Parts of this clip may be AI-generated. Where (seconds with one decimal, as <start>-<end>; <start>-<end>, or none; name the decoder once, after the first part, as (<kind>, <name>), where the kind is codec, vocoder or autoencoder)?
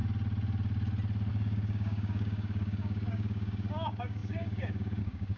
1.3-5.4 (codec, DAC)